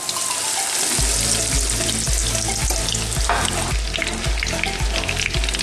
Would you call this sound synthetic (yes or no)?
no